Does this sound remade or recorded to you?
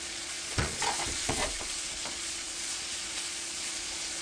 remade